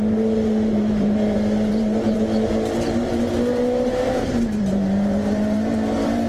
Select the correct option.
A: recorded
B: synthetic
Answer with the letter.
B